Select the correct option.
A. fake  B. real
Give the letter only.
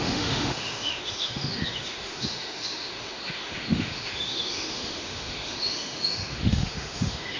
A